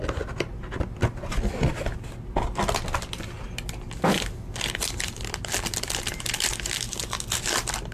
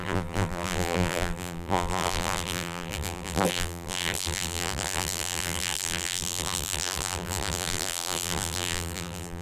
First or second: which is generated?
second